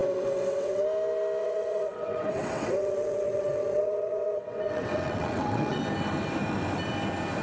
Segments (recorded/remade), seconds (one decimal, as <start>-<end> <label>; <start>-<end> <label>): 0.0-0.8 remade; 0.8-1.4 recorded; 1.4-5.8 remade; 5.8-7.4 recorded